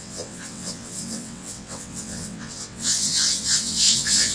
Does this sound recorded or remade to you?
remade